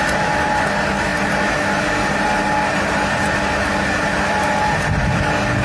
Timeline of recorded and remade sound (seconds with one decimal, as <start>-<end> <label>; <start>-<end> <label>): 0.0-5.6 recorded